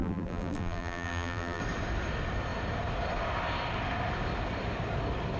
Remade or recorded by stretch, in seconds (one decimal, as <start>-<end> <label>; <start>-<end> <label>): 0.0-1.6 remade; 1.6-5.4 recorded